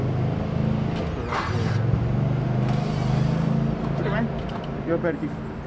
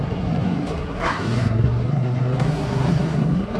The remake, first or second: second